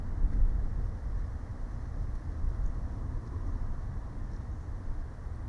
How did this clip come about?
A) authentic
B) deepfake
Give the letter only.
A